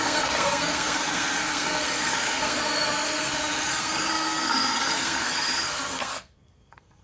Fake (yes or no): yes